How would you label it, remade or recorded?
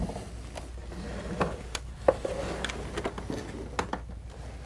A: recorded